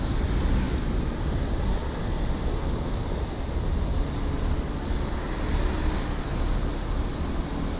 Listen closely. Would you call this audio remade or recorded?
recorded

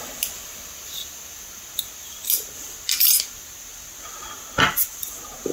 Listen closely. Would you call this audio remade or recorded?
recorded